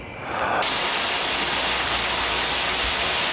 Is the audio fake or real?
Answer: real